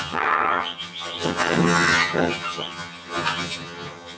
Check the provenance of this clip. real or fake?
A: fake